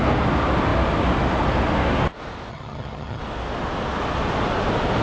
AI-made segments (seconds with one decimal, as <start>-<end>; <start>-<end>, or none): 2.5-3.2